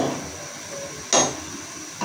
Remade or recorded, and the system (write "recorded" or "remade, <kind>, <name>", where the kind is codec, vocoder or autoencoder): recorded